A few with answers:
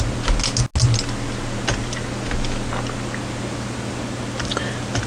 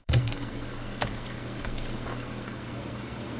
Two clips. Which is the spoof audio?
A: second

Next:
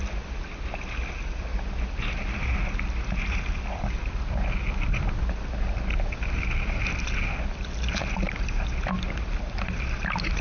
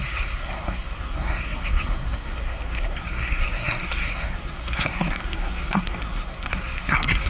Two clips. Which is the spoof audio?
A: second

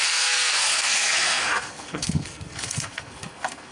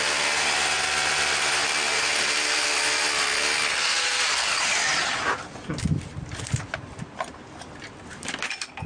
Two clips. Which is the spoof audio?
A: first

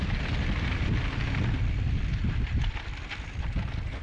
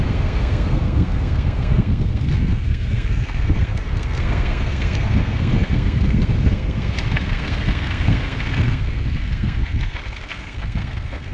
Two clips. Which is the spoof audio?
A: second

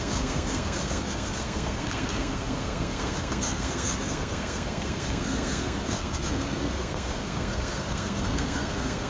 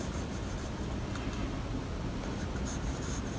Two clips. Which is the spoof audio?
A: first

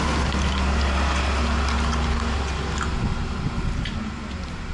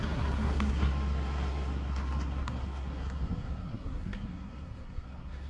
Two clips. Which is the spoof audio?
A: second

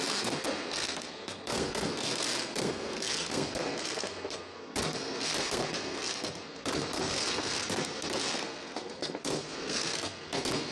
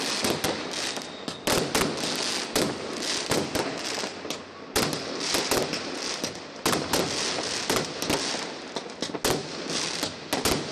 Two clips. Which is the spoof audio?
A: first